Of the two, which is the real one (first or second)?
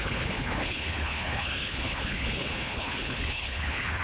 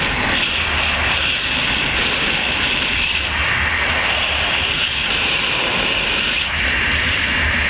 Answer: second